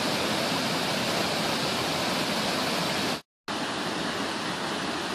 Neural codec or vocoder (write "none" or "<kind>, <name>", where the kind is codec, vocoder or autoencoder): none